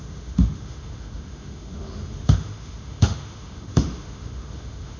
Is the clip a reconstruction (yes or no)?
yes